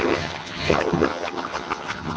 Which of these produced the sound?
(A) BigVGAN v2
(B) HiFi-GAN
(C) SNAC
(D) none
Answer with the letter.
B